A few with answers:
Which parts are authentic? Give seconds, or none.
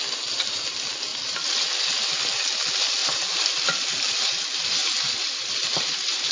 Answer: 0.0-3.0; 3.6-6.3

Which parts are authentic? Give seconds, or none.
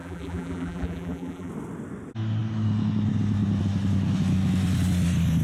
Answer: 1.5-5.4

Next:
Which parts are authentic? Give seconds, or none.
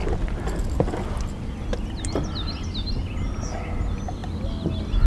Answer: 0.0-5.1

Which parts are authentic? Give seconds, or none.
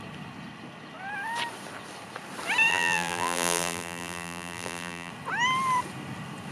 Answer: 0.0-2.7; 5.1-6.5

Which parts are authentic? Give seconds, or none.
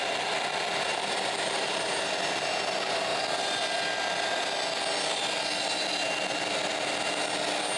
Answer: 3.1-7.8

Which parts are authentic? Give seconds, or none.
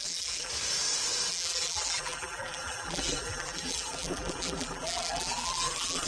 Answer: 0.5-1.3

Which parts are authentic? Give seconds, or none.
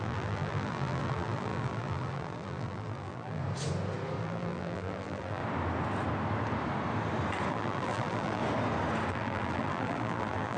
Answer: 3.4-4.2; 5.4-7.5; 8.4-9.1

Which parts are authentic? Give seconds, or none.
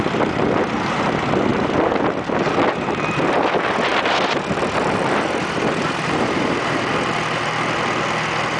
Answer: 0.0-1.5; 2.0-3.9; 6.9-8.6